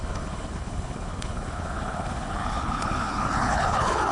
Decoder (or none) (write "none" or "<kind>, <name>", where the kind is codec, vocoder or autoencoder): codec, HILCodec